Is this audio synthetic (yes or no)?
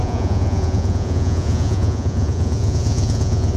yes